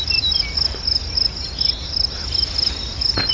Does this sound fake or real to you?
real